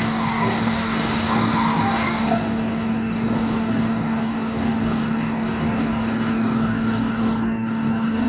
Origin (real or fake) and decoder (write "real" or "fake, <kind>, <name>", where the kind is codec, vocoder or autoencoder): fake, codec, DAC